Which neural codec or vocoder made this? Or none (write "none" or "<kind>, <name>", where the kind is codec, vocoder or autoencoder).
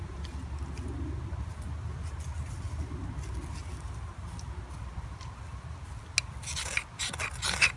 none